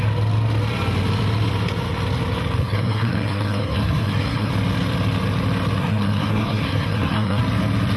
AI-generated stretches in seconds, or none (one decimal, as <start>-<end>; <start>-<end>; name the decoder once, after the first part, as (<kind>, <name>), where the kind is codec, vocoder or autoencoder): 2.6-4.5 (codec, SNAC); 5.8-7.4